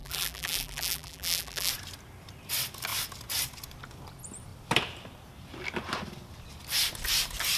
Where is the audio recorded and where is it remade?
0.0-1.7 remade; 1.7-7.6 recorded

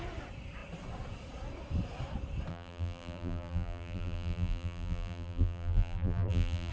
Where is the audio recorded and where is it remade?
0.0-2.5 recorded; 2.5-6.7 remade

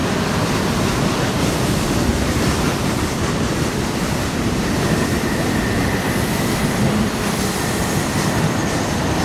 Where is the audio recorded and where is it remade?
0.0-1.2 remade; 1.2-2.1 recorded; 2.1-4.8 remade; 4.8-9.2 recorded